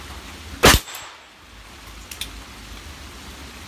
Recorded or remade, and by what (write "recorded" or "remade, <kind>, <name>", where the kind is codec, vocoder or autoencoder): recorded